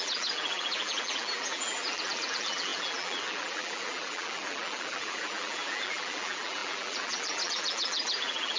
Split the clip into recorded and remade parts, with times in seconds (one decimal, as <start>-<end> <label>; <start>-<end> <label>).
0.0-8.6 remade